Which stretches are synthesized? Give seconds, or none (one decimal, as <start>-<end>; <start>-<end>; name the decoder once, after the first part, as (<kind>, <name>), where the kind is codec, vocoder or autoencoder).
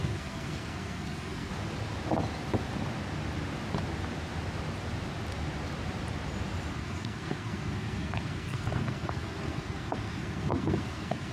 0.0-1.5 (codec, SNAC); 6.7-11.3